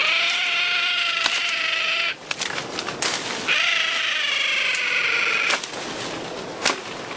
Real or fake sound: real